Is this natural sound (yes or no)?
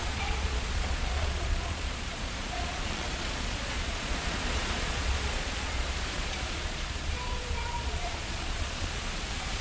no